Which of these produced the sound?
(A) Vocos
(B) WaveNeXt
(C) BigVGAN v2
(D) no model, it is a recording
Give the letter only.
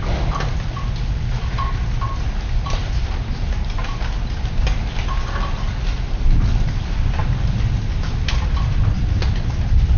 D